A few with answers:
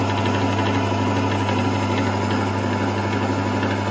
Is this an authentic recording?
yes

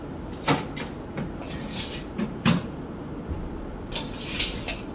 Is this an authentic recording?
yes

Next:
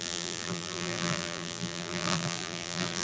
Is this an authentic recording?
no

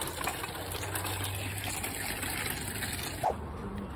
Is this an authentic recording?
yes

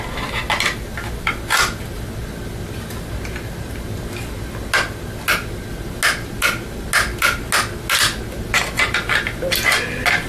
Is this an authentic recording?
yes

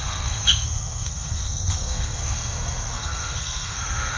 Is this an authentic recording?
no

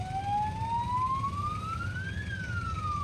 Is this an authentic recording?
yes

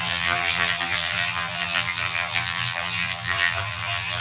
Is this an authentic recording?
no